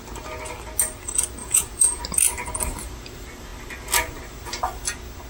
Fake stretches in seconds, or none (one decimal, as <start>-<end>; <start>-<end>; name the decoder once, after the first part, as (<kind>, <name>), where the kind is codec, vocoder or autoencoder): 1.4-2.0 (vocoder, Vocos)